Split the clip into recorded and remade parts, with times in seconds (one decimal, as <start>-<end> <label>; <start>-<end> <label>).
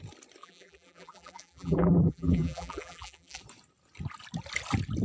0.0-0.4 recorded; 0.4-3.4 remade; 3.4-5.0 recorded